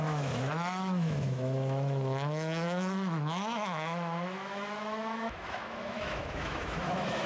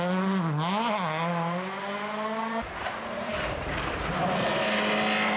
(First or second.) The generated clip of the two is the first